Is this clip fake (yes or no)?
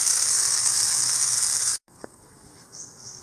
yes